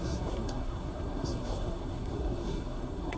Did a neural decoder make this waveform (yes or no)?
yes